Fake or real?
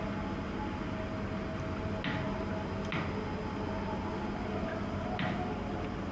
real